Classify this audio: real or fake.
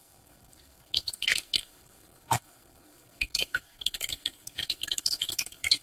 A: fake